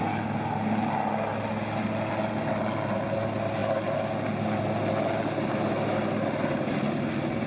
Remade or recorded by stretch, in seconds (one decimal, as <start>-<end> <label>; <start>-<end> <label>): 0.0-7.5 recorded